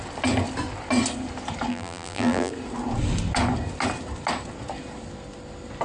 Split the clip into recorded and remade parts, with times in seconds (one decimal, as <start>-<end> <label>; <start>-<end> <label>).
0.0-1.7 recorded; 1.7-2.5 remade; 2.5-5.8 recorded